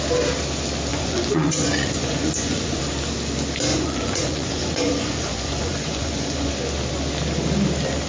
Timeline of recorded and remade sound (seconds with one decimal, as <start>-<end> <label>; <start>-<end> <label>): 0.0-0.9 recorded; 0.9-2.8 remade; 2.8-3.7 recorded; 3.7-6.5 remade; 6.5-8.1 recorded